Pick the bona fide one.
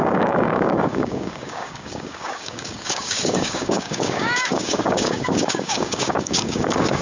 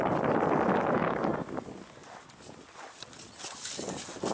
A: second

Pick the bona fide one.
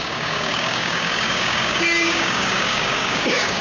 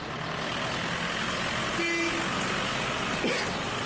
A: second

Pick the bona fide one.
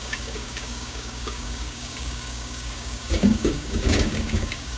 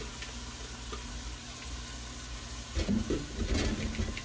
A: second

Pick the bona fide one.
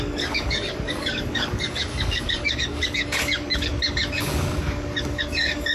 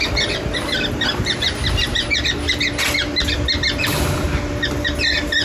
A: second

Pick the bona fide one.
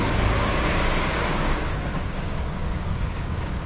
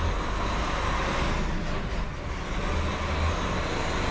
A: second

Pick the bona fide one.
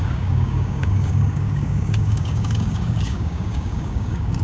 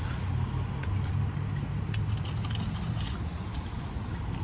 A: second